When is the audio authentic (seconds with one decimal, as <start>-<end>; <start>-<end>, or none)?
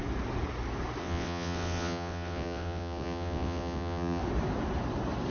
0.0-1.0; 4.2-5.3